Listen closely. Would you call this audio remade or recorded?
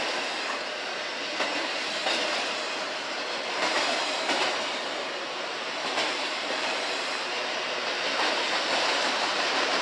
remade